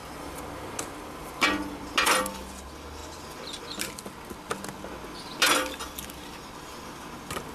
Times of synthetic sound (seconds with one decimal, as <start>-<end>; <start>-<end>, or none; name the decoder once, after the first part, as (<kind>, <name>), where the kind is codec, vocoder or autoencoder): none